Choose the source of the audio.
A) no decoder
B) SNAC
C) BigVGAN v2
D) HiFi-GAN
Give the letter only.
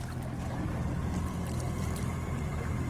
A